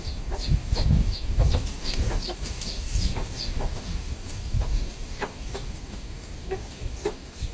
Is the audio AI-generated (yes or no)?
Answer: yes